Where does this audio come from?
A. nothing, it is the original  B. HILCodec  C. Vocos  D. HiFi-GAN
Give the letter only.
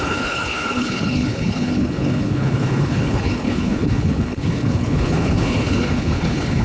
B